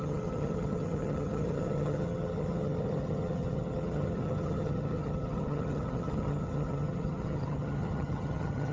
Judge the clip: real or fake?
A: fake